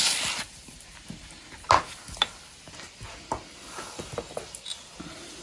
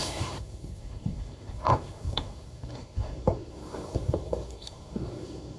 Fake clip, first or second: second